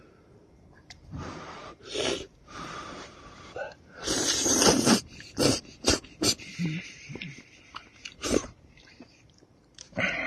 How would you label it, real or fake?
fake